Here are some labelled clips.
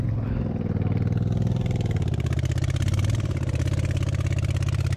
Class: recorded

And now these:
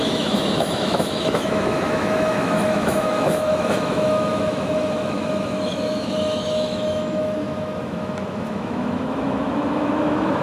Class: remade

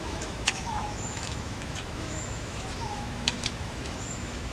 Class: remade